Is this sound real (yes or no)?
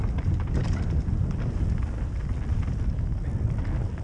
yes